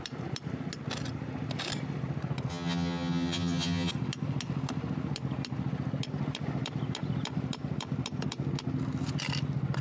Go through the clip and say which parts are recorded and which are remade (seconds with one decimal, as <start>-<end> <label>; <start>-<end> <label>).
0.0-2.5 recorded; 2.5-3.9 remade; 3.9-9.8 recorded